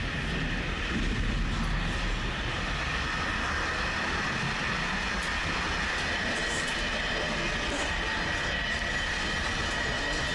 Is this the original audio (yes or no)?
yes